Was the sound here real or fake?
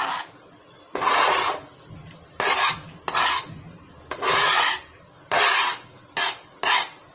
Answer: real